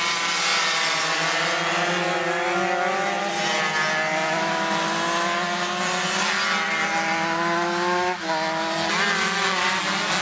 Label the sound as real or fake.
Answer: real